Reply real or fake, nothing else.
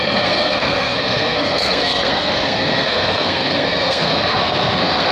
fake